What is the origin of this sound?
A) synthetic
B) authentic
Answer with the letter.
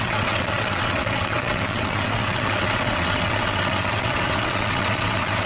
A